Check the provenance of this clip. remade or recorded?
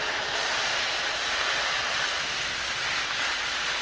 recorded